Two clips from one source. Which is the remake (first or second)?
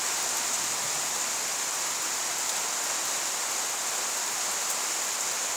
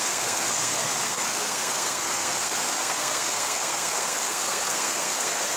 second